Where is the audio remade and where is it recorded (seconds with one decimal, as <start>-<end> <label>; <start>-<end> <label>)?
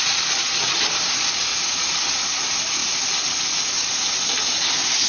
0.0-1.5 recorded; 1.5-2.4 remade; 2.4-5.1 recorded